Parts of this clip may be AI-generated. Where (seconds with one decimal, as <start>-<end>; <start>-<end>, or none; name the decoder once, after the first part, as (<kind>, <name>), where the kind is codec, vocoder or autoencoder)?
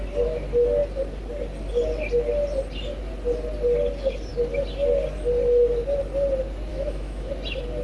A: 6.7-7.3 (autoencoder, DAC-VAE)